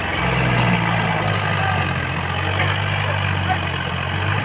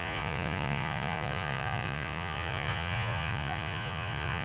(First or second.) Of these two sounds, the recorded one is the first